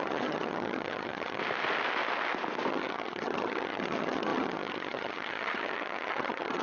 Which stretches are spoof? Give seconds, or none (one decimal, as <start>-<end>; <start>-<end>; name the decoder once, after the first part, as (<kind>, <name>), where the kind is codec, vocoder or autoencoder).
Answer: 0.0-1.4 (vocoder, HiFi-GAN); 2.7-6.6